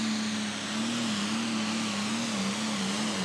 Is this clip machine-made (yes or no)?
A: no